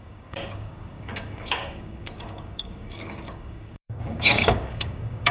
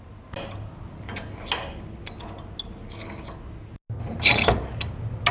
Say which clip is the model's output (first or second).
first